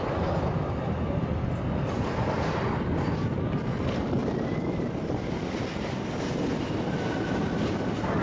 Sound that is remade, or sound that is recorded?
recorded